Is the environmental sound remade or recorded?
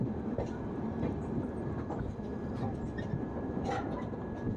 recorded